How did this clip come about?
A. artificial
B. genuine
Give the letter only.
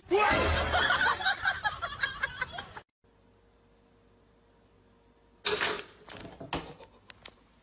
B